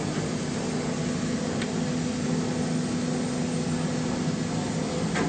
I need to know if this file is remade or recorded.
recorded